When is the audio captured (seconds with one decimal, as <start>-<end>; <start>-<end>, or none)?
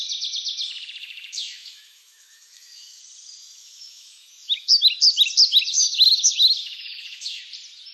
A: 0.0-1.0; 3.0-3.4; 4.8-5.7; 7.4-7.9